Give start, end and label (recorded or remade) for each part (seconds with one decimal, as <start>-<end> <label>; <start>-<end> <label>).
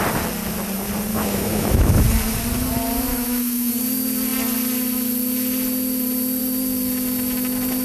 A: 0.0-1.1 recorded; 1.1-2.0 remade; 2.0-3.1 recorded; 3.1-3.7 remade; 3.7-7.8 recorded